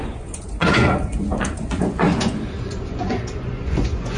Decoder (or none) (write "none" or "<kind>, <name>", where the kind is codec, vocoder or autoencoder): vocoder, Vocos